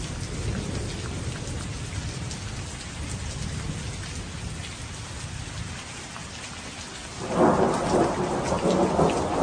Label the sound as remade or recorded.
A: recorded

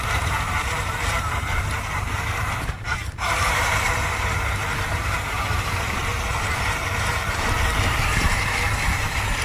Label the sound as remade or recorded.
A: remade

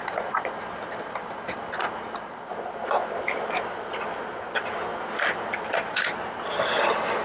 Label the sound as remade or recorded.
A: recorded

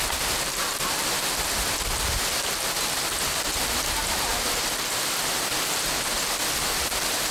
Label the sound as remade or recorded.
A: recorded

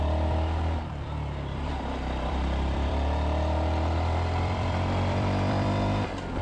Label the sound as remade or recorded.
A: remade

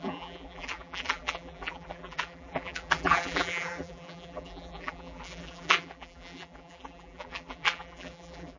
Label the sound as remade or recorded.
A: remade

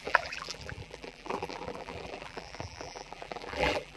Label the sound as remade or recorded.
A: remade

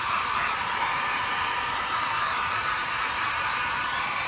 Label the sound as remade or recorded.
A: remade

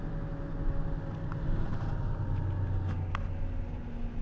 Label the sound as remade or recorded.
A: recorded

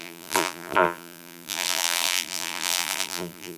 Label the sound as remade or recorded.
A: remade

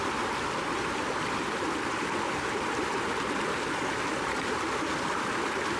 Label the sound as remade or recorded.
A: remade